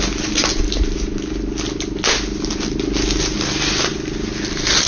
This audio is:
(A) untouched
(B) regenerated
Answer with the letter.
A